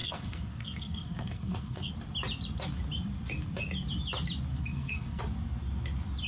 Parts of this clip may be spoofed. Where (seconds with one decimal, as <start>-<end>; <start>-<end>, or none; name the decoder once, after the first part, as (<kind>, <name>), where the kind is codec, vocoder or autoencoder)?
0.0-1.9 (codec, SNAC); 4.5-5.2